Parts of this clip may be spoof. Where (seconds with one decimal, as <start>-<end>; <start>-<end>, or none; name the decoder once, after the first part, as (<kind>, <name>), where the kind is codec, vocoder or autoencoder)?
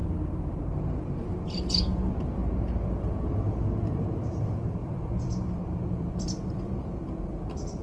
1.7-2.4 (vocoder, BigVGAN v2); 3.0-7.8